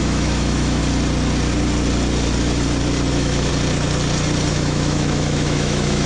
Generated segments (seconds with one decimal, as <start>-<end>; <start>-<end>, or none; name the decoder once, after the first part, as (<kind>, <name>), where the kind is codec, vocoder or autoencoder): 0.0-0.8 (autoencoder, DAC-VAE); 3.1-3.5; 4.5-6.1

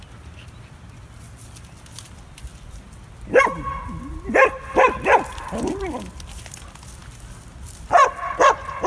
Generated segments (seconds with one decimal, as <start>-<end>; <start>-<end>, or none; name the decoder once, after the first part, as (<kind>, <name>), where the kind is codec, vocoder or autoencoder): none

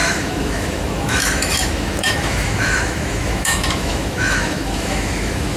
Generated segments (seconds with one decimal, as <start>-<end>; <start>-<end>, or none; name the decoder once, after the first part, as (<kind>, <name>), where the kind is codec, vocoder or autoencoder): 0.0-5.6 (autoencoder, DAC-VAE)

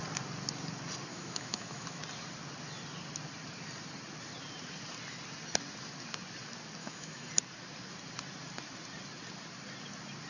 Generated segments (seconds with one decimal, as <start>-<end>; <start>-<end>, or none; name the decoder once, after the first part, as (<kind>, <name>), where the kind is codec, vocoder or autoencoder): 1.1-2.0 (autoencoder, DAC-VAE); 6.8-7.3

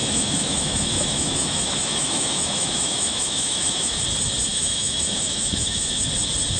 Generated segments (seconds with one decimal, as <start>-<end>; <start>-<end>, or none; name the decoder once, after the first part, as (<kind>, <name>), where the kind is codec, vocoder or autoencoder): 0.0-4.0 (autoencoder, DAC-VAE); 4.5-6.0